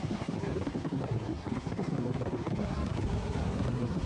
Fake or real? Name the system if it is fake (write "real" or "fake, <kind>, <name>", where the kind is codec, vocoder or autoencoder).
fake, codec, SNAC